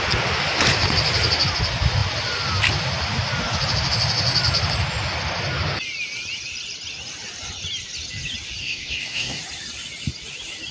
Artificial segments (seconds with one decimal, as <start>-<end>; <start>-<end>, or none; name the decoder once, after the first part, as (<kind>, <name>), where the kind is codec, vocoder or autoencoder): 8.6-9.4 (codec, SNAC)